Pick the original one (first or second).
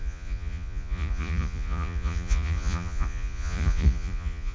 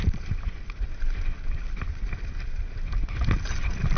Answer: second